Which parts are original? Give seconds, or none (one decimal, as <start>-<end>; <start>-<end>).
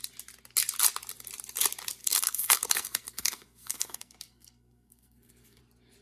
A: 0.0-2.0; 5.6-6.0